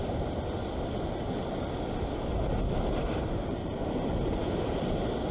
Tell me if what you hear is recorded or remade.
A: recorded